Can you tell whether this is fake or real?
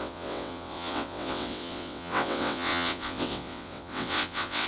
fake